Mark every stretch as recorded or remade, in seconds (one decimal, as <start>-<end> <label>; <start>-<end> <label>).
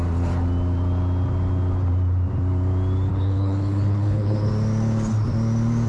0.0-3.1 recorded; 3.1-4.5 remade; 4.5-5.9 recorded